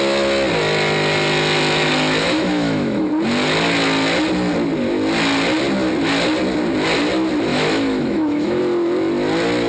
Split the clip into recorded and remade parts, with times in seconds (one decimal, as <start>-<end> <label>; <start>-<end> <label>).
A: 0.0-2.2 recorded; 2.2-3.1 remade; 3.1-7.5 recorded; 7.5-8.6 remade; 8.6-9.7 recorded